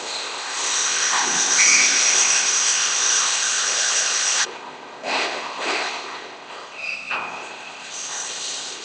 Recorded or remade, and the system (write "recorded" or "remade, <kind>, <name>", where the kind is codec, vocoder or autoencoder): remade, codec, ZipCodec